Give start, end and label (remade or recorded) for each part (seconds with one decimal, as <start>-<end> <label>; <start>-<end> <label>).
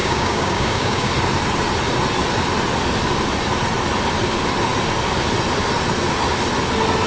0.0-1.1 remade; 1.1-7.1 recorded